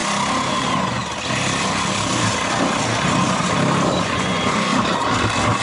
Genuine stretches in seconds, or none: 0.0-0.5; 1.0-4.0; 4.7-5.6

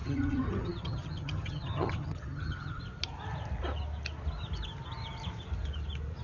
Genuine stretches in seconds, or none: 2.8-6.2

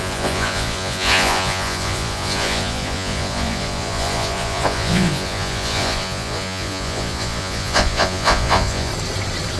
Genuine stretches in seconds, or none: 8.9-9.6

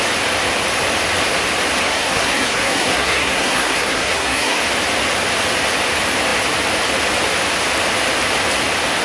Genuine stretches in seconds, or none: 0.0-1.8; 4.6-9.0

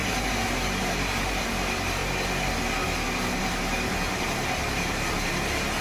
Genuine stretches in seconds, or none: 2.0-3.4

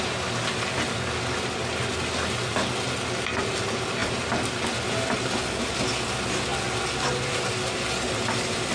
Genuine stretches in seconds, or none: 0.0-8.7

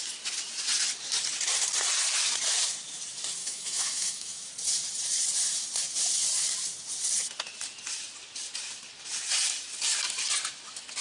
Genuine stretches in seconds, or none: 0.0-3.4; 4.5-11.0

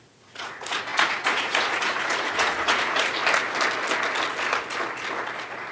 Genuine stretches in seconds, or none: 3.2-5.7